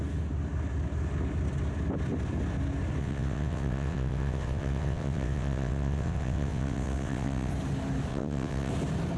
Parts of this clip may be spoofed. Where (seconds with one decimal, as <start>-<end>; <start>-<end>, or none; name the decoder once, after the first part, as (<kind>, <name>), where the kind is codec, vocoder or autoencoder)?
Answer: 3.0-7.5 (vocoder, WaveNeXt); 8.1-8.7